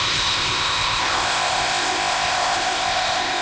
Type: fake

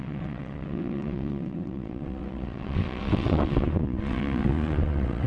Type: fake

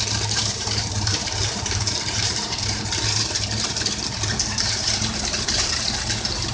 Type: fake